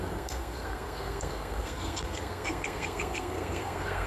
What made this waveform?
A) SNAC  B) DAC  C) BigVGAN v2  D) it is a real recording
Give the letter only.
A